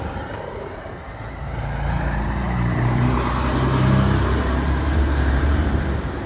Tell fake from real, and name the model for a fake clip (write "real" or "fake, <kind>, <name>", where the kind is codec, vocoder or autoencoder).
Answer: fake, vocoder, BigVGAN v2